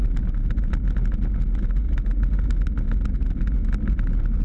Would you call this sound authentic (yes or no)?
yes